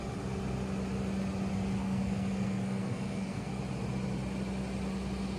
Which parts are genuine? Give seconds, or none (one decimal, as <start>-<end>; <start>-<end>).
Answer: 0.0-1.8; 3.6-5.4